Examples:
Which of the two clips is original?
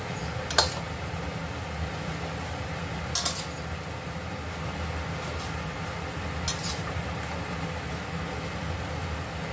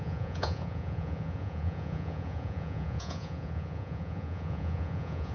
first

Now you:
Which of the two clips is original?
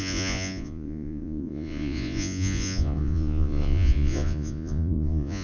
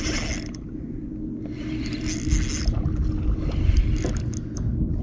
second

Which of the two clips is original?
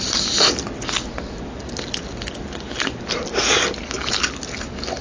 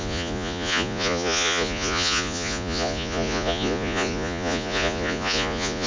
first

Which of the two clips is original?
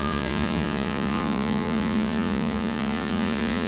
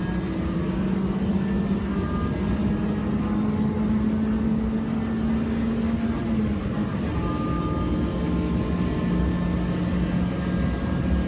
second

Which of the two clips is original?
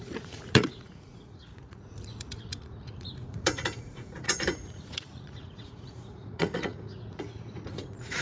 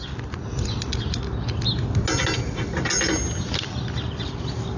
second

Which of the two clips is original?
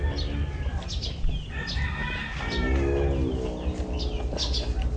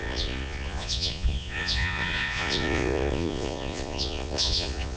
first